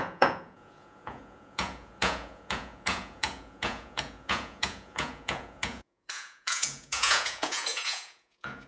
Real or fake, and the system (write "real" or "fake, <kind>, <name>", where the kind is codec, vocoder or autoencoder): fake, vocoder, Vocos